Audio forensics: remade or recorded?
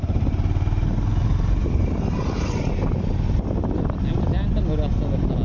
recorded